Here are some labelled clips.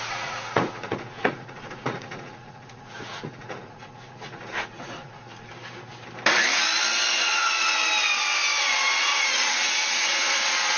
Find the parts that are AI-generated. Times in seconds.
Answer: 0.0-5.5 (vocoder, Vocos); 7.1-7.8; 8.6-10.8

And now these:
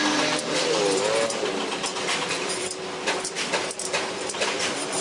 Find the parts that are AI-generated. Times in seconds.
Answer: 1.9-5.0 (vocoder, BigVGAN v2)